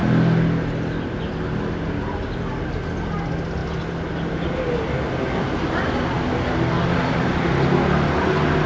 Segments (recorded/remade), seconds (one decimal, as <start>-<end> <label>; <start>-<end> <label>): 0.0-8.7 recorded